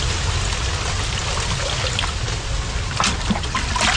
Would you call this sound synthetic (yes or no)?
no